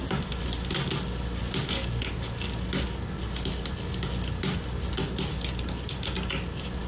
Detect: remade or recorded recorded